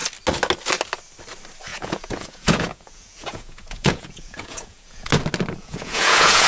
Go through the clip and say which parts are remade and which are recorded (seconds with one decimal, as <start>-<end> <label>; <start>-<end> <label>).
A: 0.0-1.7 recorded; 1.7-5.1 remade; 5.1-5.6 recorded; 5.6-6.5 remade